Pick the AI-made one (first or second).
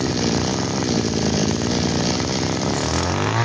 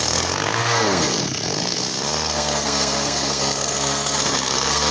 second